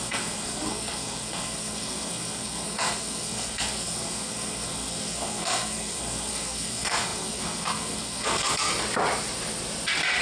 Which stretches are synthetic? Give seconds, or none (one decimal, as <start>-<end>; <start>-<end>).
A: 0.0-8.7